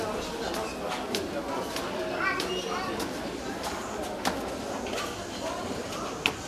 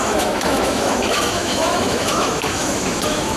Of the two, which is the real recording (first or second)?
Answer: first